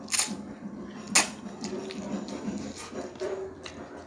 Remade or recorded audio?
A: recorded